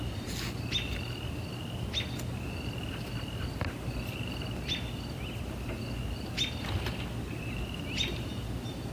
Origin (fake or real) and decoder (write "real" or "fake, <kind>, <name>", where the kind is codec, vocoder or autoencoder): real